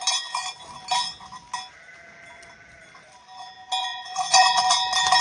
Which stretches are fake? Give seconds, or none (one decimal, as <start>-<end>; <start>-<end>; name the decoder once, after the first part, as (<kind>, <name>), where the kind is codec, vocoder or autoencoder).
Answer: 3.9-4.6 (vocoder, Vocos)